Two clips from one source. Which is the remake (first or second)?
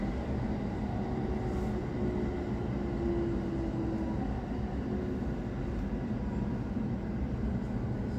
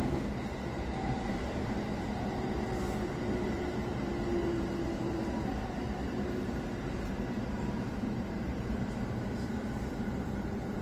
second